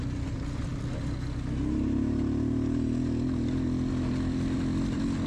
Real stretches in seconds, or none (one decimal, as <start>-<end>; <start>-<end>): 0.7-3.9